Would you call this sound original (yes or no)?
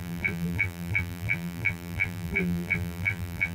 no